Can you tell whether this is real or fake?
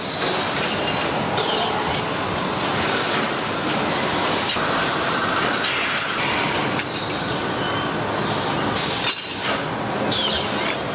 real